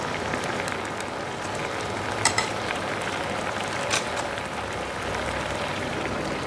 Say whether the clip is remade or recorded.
remade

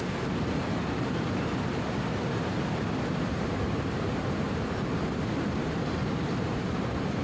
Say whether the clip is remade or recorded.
remade